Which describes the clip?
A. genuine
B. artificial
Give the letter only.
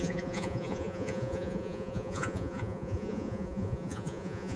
B